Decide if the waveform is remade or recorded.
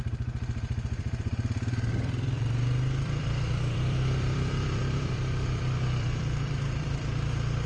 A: remade